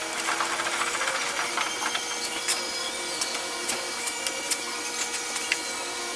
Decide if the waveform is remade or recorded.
recorded